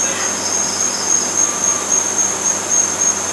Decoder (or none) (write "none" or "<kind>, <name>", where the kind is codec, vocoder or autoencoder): none